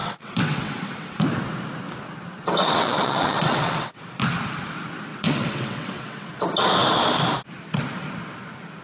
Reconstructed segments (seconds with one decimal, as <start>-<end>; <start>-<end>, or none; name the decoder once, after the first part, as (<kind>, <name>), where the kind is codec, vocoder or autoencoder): 0.0-1.2 (vocoder, WaveNeXt); 2.6-4.0; 5.1-6.3